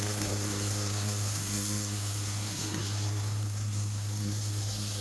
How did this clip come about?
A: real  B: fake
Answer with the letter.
B